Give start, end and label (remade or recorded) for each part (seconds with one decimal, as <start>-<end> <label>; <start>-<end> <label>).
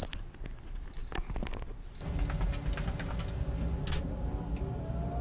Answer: 0.0-5.2 recorded